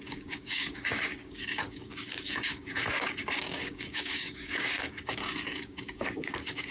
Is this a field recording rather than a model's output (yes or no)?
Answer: no